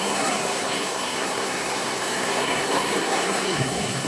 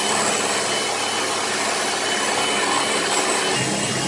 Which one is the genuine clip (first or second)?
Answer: second